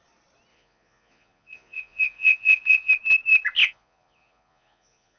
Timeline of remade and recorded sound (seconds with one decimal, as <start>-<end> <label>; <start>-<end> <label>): 0.0-0.5 recorded; 0.5-2.9 remade; 2.9-3.6 recorded; 3.6-5.2 remade